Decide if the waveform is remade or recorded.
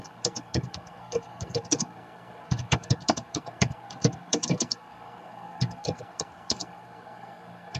remade